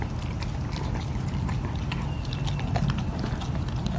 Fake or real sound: real